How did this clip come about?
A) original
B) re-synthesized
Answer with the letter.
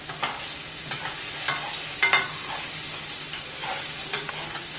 A